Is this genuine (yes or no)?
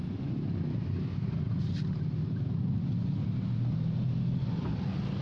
yes